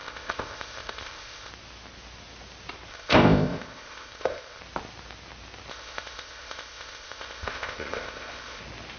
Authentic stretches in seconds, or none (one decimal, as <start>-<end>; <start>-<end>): 1.5-2.9; 4.6-5.7; 8.6-9.0